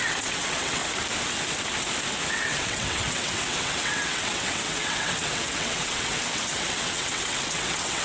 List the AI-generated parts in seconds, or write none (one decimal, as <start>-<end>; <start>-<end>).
0.0-0.8; 2.3-8.0